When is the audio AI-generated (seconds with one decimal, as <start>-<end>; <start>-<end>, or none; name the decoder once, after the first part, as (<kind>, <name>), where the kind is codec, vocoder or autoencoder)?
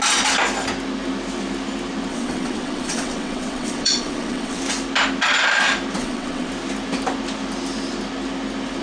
2.1-4.6 (vocoder, WaveNeXt); 6.0-6.5